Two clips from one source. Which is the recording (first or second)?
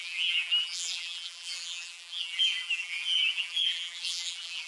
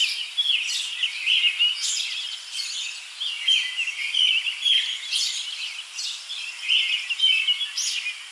second